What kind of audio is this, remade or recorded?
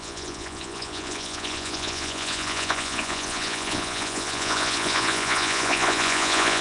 remade